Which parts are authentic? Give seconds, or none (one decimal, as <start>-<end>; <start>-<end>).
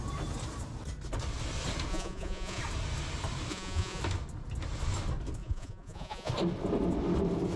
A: 0.0-1.9; 2.6-3.5; 4.0-5.4; 6.3-7.6